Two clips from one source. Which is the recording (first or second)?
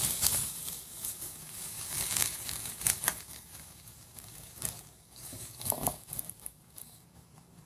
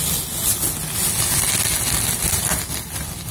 second